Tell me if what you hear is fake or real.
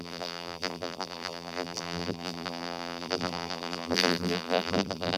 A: fake